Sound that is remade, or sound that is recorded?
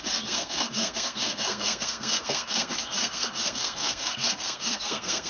remade